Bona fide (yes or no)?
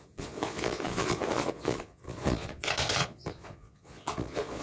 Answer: no